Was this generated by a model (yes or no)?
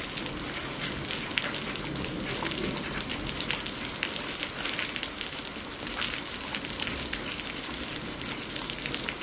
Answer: no